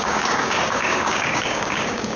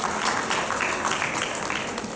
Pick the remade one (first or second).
first